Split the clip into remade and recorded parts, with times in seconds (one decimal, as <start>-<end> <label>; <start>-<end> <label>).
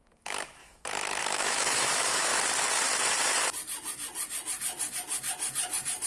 0.0-2.3 remade; 2.3-6.1 recorded